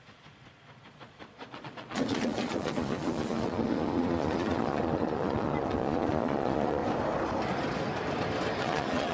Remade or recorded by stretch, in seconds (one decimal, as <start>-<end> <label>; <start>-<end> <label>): 0.0-6.8 remade; 6.8-8.6 recorded; 8.6-9.1 remade